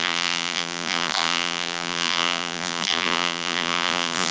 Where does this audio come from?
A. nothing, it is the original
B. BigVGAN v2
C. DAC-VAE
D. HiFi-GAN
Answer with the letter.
B